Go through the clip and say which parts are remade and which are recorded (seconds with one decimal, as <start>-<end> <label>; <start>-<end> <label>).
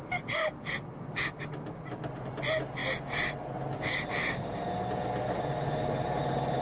0.0-6.6 recorded